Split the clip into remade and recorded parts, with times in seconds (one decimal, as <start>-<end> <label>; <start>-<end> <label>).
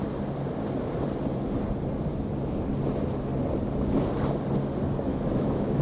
0.0-5.1 recorded; 5.1-5.8 remade